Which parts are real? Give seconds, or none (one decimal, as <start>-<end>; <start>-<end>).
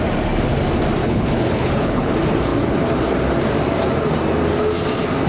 0.0-1.0; 2.1-5.3